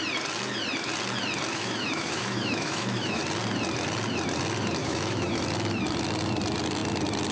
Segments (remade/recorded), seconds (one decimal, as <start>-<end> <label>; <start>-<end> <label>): 0.0-1.5 recorded; 1.5-3.2 remade; 3.2-4.8 recorded; 4.8-5.4 remade; 5.4-7.3 recorded